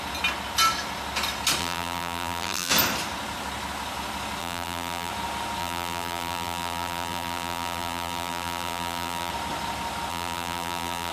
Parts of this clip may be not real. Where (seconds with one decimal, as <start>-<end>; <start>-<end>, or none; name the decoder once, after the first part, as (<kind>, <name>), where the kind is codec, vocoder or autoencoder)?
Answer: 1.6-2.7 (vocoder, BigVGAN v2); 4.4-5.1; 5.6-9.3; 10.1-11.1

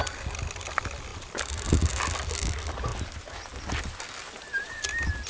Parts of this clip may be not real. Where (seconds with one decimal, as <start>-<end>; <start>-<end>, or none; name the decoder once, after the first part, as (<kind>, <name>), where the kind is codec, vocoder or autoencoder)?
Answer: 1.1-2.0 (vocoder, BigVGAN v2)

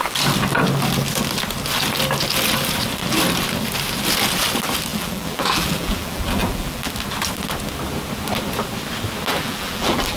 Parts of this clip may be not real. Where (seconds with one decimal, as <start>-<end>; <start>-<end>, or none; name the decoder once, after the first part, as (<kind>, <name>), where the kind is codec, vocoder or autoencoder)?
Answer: 4.9-6.9 (vocoder, BigVGAN v2); 9.3-10.2

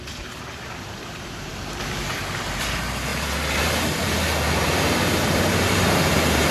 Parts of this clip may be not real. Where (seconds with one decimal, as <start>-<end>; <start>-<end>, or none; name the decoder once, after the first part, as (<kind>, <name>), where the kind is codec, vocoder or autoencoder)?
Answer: 0.0-6.5 (vocoder, BigVGAN v2)